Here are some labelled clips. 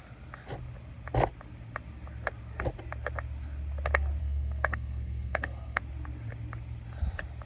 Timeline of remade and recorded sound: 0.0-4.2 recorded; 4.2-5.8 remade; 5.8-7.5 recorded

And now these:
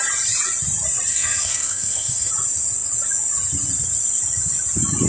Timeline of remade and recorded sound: 0.0-1.1 recorded; 1.1-2.3 remade; 2.3-5.1 recorded

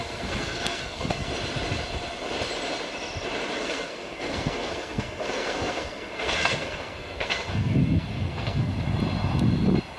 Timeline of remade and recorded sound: 0.0-1.3 remade; 1.3-3.6 recorded; 3.6-8.7 remade; 8.7-10.0 recorded

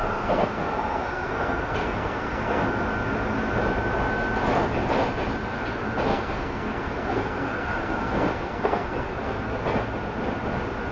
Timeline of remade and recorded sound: 0.0-2.6 remade; 2.6-6.1 recorded; 6.1-9.5 remade; 9.5-10.9 recorded

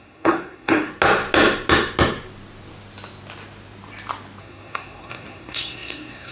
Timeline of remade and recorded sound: 0.0-0.9 remade; 0.9-4.4 recorded; 4.4-6.3 remade